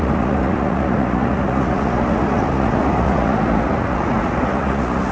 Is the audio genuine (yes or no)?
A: no